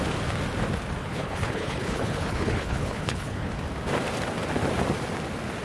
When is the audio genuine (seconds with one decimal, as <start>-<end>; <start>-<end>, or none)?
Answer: 0.0-1.0; 3.5-5.6